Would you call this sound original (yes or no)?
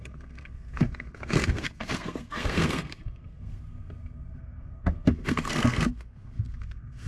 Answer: no